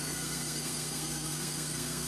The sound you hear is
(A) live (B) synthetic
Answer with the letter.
B